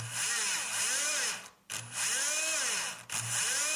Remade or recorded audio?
recorded